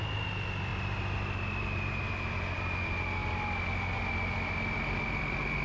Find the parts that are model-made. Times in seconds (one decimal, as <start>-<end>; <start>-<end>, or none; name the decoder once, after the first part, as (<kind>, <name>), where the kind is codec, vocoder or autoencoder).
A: none